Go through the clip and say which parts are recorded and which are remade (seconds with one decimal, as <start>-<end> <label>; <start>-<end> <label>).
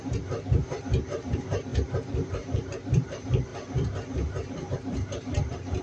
0.0-3.5 remade; 3.5-4.7 recorded; 4.7-5.8 remade